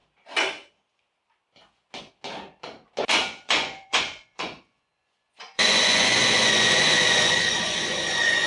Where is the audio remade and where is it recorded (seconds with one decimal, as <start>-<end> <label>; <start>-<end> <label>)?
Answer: 0.0-3.2 recorded; 3.2-8.5 remade